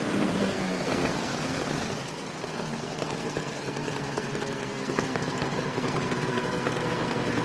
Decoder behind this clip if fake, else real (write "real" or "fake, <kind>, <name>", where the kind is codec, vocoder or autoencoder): fake, codec, SNAC